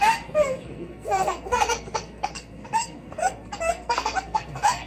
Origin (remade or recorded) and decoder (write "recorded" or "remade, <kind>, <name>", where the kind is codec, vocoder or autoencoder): remade, codec, SNAC